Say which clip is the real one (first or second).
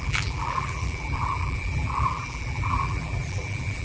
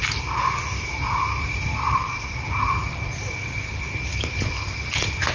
second